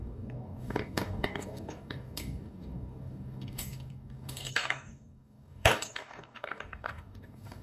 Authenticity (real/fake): fake